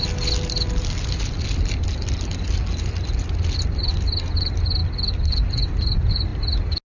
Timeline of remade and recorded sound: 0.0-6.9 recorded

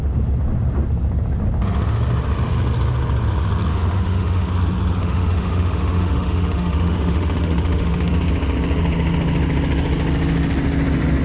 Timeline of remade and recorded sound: 0.0-3.7 recorded; 3.7-4.5 remade; 4.5-5.0 recorded; 5.0-8.1 remade; 8.1-11.2 recorded

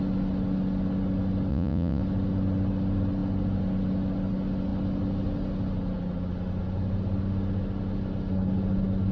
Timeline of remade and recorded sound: 0.0-1.5 recorded; 1.5-2.0 remade; 2.0-9.1 recorded